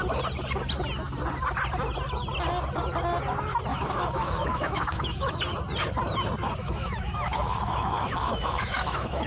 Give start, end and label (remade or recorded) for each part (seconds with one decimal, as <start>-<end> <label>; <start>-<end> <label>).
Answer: 0.0-3.7 recorded; 3.7-5.4 remade; 5.4-6.6 recorded; 6.6-9.3 remade